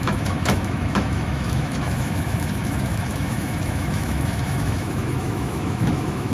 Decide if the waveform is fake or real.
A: fake